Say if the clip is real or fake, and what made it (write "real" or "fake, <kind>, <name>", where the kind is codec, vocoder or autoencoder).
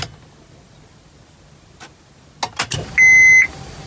real